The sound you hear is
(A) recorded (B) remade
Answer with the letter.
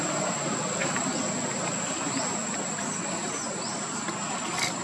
A